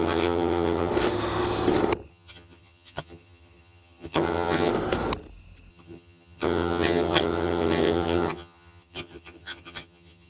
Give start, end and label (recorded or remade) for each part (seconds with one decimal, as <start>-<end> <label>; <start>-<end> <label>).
0.0-0.9 remade; 0.9-2.1 recorded; 2.1-4.7 remade; 4.7-5.7 recorded; 5.7-10.3 remade

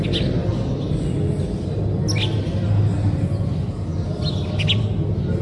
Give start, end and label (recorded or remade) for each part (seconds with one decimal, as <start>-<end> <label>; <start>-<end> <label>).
0.0-5.4 recorded